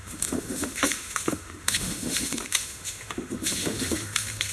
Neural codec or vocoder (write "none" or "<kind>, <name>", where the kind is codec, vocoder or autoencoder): autoencoder, DAC-VAE